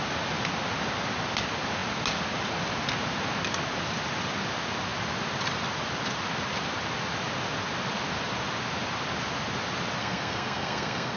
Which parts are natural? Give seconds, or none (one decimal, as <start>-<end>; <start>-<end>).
0.0-10.0